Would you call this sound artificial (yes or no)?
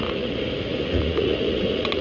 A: yes